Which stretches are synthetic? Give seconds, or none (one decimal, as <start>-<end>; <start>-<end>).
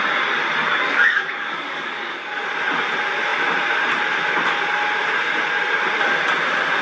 0.7-2.4